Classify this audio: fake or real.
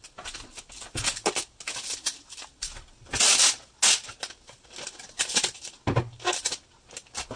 real